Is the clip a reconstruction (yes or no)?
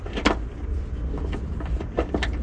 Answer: no